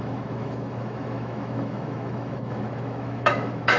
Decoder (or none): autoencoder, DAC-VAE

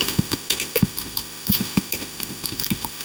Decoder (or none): autoencoder, DAC-VAE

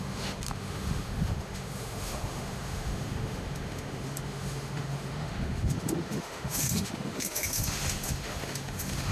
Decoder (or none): autoencoder, DAC-VAE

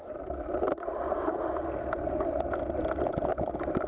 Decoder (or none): none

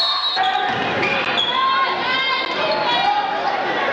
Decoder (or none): none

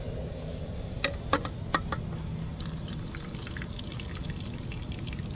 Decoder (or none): none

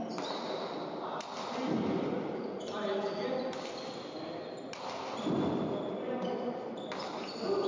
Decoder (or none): none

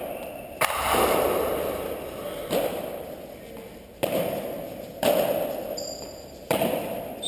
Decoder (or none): none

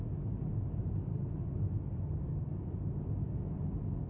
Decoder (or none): none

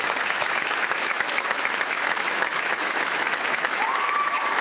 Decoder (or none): autoencoder, DAC-VAE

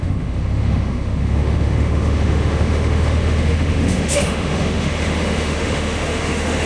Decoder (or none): autoencoder, DAC-VAE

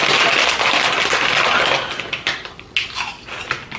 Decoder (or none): none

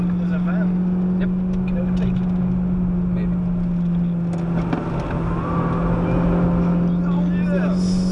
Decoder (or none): none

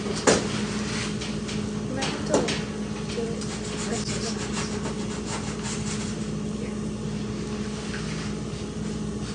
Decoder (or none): none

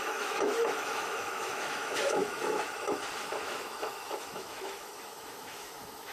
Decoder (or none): autoencoder, DAC-VAE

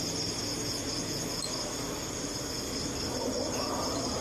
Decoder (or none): none